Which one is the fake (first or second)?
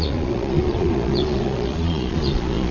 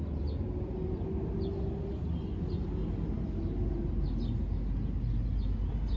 first